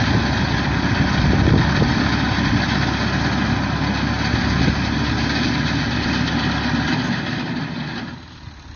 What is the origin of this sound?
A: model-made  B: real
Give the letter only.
B